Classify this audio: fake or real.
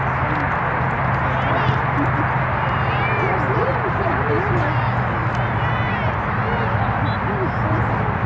real